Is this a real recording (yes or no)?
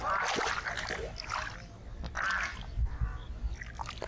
yes